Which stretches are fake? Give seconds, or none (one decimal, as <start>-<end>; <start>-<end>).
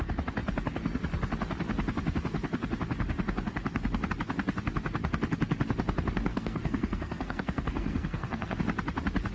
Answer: 6.3-8.6